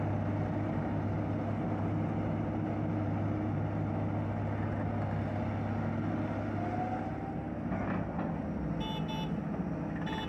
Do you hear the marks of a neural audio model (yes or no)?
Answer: no